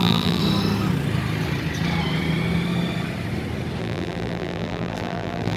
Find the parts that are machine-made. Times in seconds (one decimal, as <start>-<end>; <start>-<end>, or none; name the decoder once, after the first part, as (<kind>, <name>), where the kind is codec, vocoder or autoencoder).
0.0-0.4 (vocoder, BigVGAN v2); 3.8-5.6